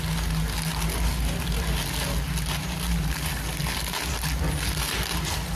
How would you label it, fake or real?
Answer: real